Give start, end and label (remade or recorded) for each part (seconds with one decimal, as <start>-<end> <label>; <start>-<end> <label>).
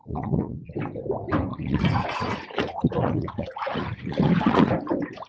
0.0-0.7 remade; 0.7-1.5 recorded; 1.5-4.7 remade; 4.7-5.3 recorded